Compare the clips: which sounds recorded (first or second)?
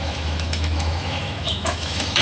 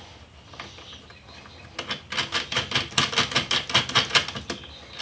second